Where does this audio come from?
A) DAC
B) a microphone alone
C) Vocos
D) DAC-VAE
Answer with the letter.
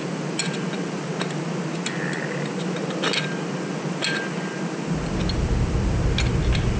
B